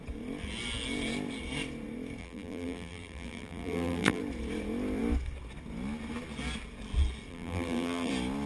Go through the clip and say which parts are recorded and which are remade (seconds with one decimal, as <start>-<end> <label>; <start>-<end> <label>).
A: 0.0-2.2 recorded; 2.2-4.2 remade; 4.2-7.3 recorded; 7.3-8.1 remade; 8.1-8.5 recorded